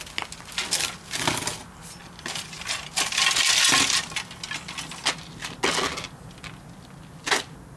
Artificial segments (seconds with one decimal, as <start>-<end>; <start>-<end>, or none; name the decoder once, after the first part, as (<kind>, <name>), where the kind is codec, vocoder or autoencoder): 2.0-3.7 (vocoder, BigVGAN v2)